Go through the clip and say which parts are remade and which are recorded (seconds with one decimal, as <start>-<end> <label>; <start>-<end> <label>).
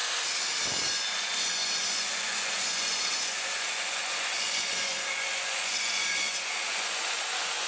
0.0-0.9 recorded; 0.9-7.7 remade